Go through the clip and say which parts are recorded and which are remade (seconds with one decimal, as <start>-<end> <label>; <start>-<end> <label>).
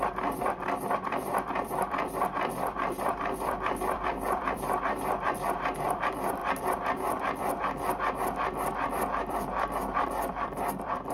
0.0-6.4 remade; 6.4-8.9 recorded; 8.9-11.1 remade